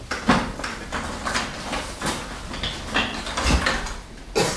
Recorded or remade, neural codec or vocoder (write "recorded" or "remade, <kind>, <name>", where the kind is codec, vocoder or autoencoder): recorded